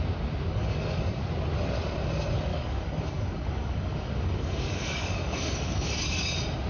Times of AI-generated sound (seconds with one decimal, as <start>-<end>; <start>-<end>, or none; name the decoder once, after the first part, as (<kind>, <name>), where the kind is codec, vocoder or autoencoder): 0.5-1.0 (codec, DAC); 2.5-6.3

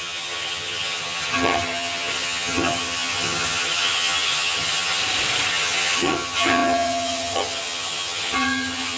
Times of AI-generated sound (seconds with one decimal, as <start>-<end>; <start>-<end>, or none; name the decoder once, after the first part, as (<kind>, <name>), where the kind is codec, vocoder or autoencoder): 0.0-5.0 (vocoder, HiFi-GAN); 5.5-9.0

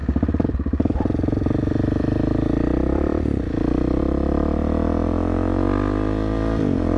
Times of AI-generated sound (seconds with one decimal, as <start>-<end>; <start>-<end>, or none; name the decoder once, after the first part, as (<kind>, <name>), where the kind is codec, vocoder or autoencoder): 0.0-4.0 (vocoder, BigVGAN v2)

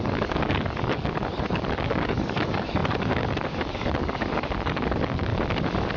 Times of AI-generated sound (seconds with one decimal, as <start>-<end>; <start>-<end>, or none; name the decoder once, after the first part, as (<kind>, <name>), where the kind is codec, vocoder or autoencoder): 0.0-5.3 (codec, DAC)

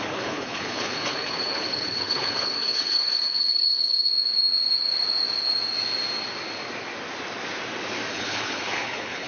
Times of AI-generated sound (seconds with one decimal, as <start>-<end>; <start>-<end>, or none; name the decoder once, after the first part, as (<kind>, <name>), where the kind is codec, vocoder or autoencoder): 0.0-4.1 (codec, HILCodec); 8.1-9.3